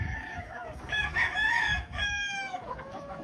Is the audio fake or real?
fake